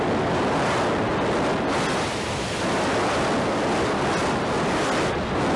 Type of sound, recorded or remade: recorded